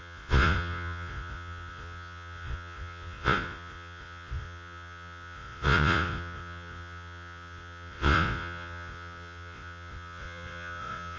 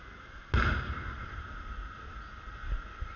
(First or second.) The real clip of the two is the second